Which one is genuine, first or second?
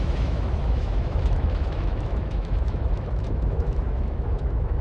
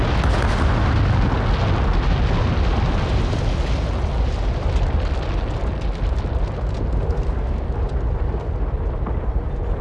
second